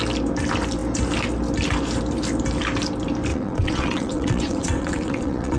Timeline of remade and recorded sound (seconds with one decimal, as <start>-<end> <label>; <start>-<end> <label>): 0.0-3.3 recorded; 3.3-5.6 remade